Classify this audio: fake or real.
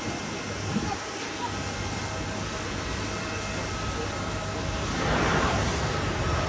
real